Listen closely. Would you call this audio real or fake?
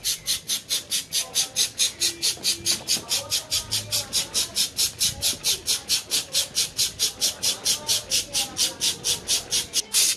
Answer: real